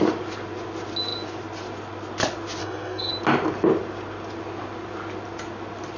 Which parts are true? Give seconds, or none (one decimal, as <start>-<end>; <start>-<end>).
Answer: 0.0-2.6; 3.1-6.0